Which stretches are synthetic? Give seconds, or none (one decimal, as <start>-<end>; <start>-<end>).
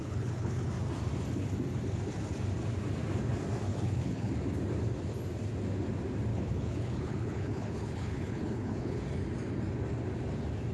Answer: 0.0-0.7; 3.7-4.3; 6.3-9.0